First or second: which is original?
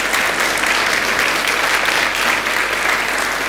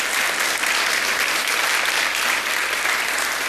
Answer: first